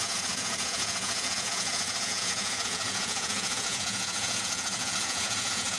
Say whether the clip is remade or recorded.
remade